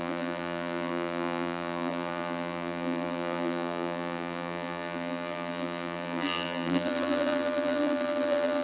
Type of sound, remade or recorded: remade